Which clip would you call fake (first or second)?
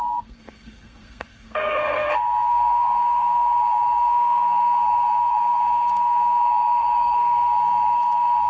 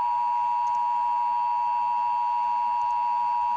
first